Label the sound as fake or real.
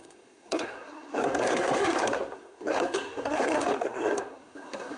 fake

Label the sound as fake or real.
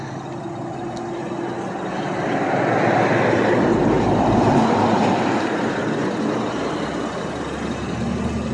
real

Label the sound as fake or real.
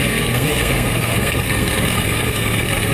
fake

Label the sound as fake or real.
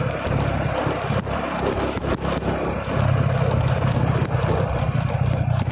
real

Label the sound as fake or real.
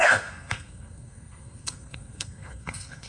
fake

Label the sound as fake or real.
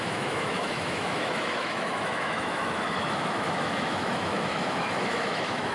fake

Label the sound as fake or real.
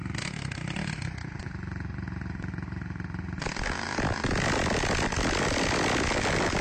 real